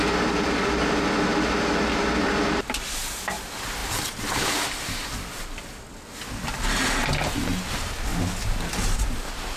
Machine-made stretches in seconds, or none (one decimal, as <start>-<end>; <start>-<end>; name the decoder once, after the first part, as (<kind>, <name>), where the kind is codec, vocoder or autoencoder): 3.8-6.0 (vocoder, BigVGAN v2)